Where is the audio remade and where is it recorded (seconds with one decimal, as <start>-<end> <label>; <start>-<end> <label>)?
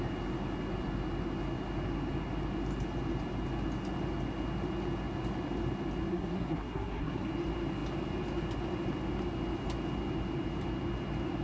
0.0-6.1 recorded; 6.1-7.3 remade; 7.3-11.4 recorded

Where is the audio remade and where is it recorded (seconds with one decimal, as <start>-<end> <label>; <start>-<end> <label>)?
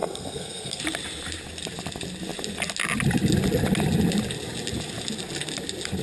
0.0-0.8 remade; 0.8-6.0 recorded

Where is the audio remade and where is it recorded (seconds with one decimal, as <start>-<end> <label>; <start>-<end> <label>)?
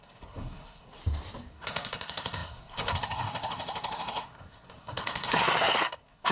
0.0-1.0 remade; 1.0-1.5 recorded; 1.5-6.3 remade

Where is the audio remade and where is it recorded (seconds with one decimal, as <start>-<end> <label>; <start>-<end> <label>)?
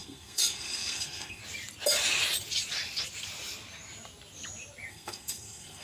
0.0-1.4 remade; 1.4-4.9 recorded; 4.9-5.8 remade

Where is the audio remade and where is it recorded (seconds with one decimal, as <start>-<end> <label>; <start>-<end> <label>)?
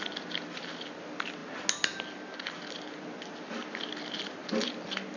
0.0-5.2 recorded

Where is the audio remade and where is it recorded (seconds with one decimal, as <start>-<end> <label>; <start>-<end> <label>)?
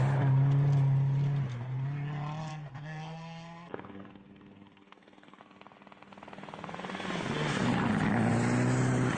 0.0-2.5 recorded; 2.5-5.4 remade; 5.4-9.2 recorded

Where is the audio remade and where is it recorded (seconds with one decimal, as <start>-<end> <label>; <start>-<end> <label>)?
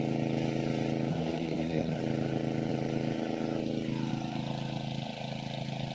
0.0-1.1 recorded; 1.1-2.0 remade; 2.0-5.9 recorded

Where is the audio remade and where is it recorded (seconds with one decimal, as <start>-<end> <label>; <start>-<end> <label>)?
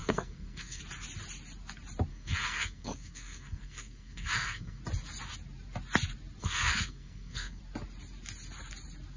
0.0-0.8 remade; 0.8-2.1 recorded; 2.1-4.8 remade; 4.8-6.4 recorded; 6.4-7.6 remade; 7.6-9.2 recorded